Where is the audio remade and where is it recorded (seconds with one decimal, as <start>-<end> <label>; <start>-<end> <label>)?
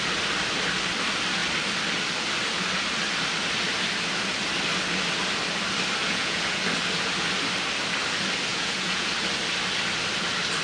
0.0-6.0 recorded; 6.0-6.6 remade; 6.6-8.5 recorded; 8.5-9.1 remade; 9.1-10.6 recorded